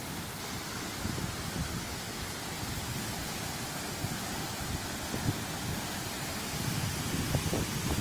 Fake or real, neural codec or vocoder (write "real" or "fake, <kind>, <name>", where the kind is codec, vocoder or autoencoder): real